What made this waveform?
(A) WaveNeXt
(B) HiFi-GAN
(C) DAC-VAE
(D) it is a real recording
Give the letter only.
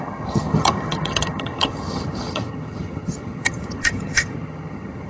B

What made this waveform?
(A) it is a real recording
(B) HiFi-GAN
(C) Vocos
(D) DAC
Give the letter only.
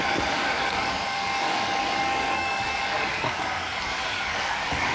D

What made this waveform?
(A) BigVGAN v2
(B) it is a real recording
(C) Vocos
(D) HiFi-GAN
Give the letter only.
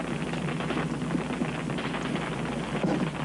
A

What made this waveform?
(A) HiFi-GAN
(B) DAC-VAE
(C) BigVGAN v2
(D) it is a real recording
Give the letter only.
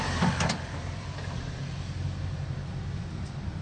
C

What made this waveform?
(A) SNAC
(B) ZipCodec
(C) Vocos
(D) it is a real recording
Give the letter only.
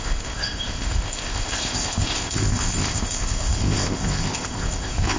B